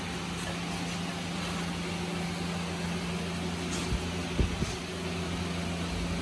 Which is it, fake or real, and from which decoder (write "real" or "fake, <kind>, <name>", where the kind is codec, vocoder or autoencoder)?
real